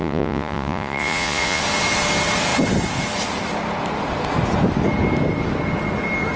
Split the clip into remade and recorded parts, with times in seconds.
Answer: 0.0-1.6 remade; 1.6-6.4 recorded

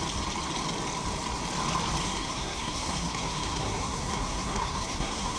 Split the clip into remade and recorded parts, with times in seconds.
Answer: 0.0-2.0 recorded; 2.0-5.4 remade

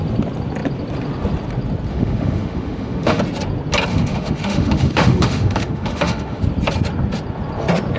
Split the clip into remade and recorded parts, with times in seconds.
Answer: 0.0-1.9 recorded; 1.9-3.2 remade; 3.2-3.9 recorded; 3.9-6.4 remade; 6.4-8.0 recorded

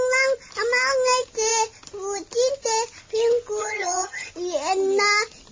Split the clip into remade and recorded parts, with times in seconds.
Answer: 0.0-3.6 recorded; 3.6-4.3 remade; 4.3-5.5 recorded

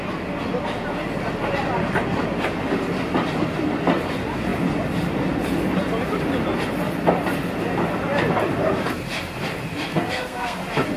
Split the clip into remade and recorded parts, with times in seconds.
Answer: 0.0-9.9 recorded; 9.9-10.6 remade; 10.6-11.0 recorded

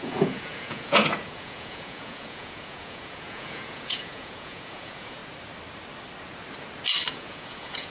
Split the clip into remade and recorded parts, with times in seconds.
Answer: 0.0-5.2 remade; 5.2-7.1 recorded; 7.1-7.9 remade

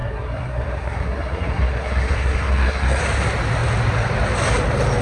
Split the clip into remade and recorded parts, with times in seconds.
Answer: 0.0-3.0 remade; 3.0-5.0 recorded